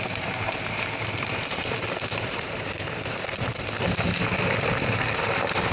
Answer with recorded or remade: remade